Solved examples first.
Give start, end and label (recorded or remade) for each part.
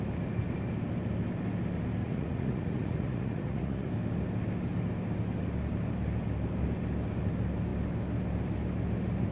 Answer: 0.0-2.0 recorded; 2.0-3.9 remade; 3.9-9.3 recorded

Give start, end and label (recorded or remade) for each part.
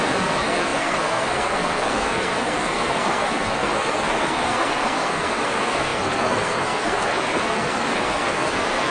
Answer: 0.0-8.9 remade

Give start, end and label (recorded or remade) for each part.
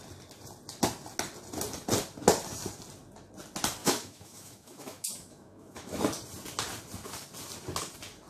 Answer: 0.0-3.8 recorded; 3.8-6.0 remade; 6.0-8.3 recorded